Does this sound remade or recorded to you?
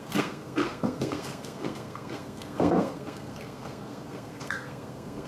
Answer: remade